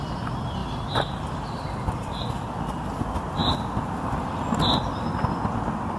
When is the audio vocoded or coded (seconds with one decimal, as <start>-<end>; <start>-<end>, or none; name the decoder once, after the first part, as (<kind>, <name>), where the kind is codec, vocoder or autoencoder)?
none